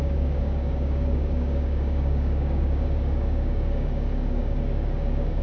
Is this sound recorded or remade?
remade